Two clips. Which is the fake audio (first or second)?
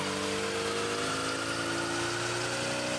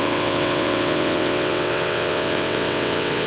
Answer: second